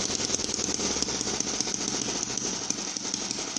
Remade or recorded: recorded